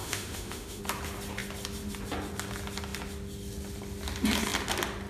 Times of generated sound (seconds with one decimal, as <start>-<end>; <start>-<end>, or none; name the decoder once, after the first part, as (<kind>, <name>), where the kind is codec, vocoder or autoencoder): 0.0-0.8 (autoencoder, DAC-VAE)